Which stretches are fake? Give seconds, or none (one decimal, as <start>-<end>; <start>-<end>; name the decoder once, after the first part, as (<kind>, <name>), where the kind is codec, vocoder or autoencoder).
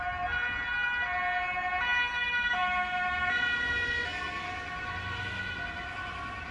none